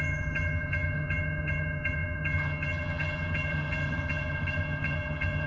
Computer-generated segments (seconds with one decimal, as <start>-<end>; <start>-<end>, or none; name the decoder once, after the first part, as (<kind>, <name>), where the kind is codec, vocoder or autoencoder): 0.0-5.5 (vocoder, HiFi-GAN)